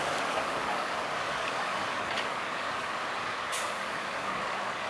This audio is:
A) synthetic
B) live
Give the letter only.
A